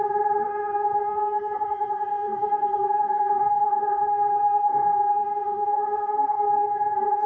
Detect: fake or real fake